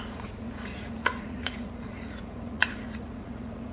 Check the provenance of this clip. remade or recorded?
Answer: remade